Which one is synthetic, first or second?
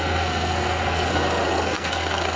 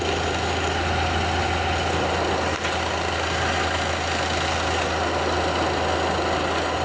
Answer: first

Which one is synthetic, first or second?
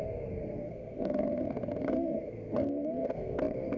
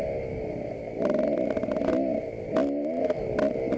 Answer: first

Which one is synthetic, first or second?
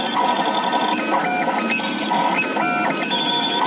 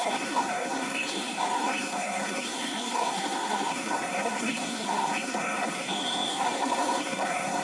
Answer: second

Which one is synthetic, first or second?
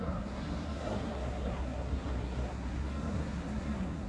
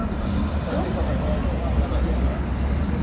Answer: first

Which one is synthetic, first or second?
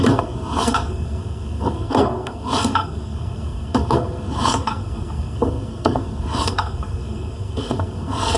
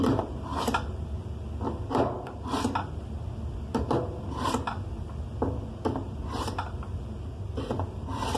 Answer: first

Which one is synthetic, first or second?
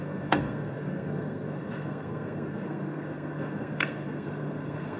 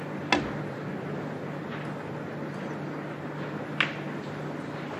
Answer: first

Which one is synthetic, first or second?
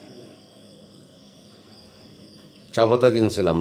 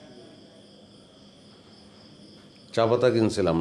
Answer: first